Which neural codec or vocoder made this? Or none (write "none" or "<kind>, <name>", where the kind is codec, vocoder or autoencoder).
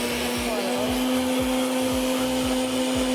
none